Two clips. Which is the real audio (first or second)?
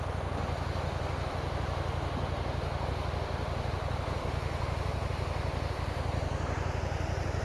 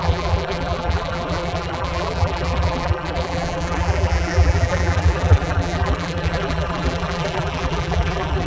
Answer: first